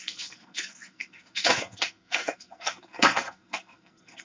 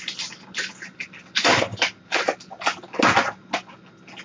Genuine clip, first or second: second